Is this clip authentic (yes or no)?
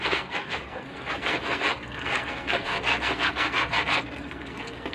no